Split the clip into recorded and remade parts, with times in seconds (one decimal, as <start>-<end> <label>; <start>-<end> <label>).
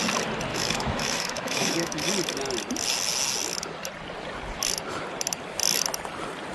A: 0.0-0.5 recorded; 0.5-2.1 remade; 2.1-6.5 recorded